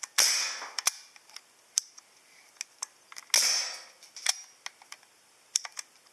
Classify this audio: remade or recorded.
recorded